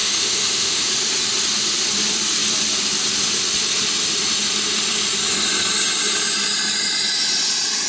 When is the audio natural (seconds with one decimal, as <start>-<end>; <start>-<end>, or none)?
0.9-7.9